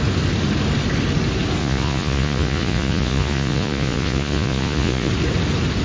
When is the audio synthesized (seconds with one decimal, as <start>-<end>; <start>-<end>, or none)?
1.6-5.1